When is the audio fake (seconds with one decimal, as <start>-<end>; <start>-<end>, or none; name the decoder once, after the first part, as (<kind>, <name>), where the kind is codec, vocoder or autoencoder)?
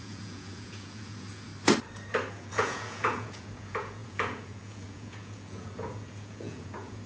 0.0-1.5 (vocoder, Vocos); 2.3-7.1